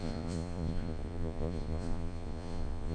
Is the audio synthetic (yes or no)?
yes